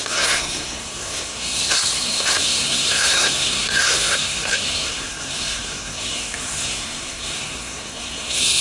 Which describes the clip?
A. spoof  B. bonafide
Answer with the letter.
A